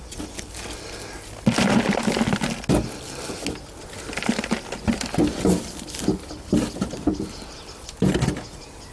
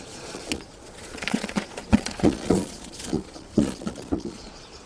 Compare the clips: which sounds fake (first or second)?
second